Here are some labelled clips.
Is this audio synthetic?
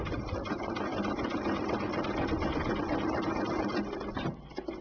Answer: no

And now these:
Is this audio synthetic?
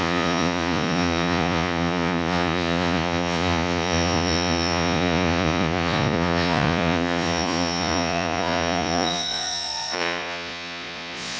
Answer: yes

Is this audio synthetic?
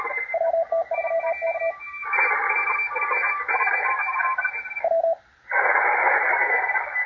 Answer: no